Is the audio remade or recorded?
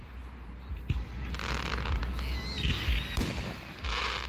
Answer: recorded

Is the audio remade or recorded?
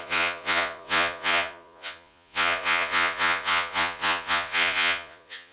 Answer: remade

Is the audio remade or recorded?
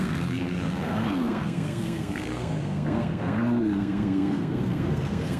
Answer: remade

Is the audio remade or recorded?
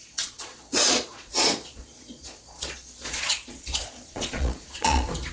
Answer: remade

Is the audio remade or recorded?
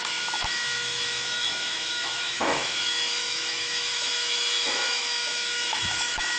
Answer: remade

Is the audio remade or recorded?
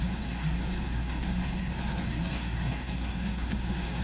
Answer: remade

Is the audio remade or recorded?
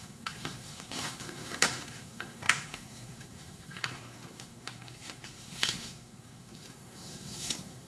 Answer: remade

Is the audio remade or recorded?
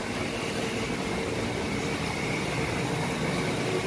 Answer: recorded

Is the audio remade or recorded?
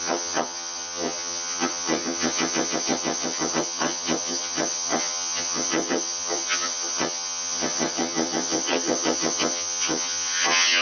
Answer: remade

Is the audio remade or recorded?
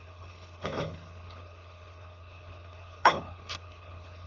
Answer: remade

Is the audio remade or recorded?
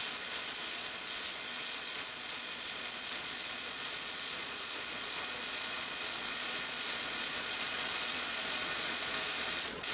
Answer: remade